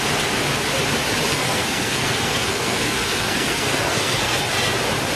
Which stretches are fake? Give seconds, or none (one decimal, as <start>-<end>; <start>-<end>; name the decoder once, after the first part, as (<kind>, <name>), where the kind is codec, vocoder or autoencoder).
1.3-4.4 (codec, SNAC)